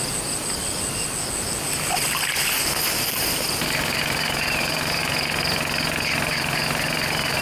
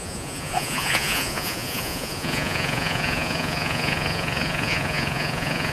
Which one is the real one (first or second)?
first